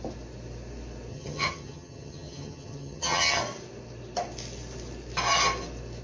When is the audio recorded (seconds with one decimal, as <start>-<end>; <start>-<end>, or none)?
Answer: 0.0-1.1; 3.4-6.0